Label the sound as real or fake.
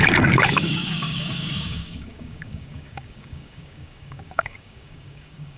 fake